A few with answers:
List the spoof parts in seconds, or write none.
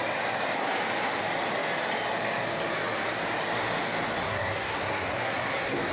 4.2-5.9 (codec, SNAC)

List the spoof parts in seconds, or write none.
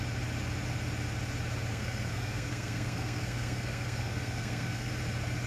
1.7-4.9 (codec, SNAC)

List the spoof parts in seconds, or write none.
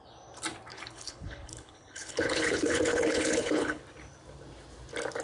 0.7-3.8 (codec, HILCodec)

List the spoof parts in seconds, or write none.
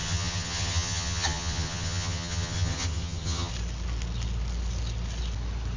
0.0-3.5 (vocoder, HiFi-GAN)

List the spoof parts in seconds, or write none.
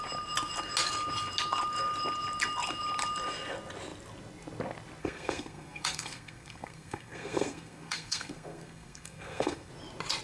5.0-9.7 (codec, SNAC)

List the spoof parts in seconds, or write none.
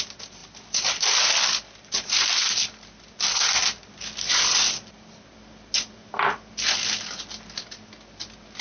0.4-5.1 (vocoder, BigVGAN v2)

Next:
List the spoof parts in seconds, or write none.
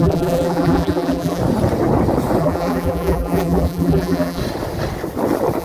0.0-1.4 (vocoder, BigVGAN v2); 2.4-4.4